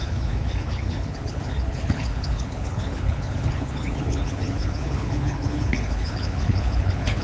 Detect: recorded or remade remade